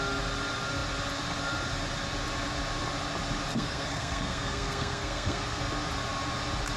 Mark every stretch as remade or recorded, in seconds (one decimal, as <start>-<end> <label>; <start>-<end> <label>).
0.0-3.5 recorded; 3.5-5.6 remade; 5.6-6.8 recorded